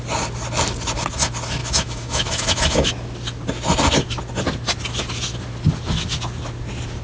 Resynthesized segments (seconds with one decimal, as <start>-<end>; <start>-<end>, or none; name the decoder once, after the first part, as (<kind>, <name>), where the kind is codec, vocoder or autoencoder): 1.6-2.9 (autoencoder, DAC-VAE)